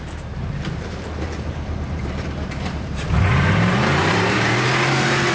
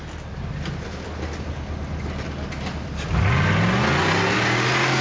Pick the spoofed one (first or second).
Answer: first